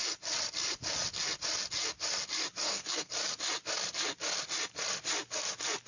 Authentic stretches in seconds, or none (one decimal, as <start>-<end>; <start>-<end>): 0.0-2.6; 3.1-5.9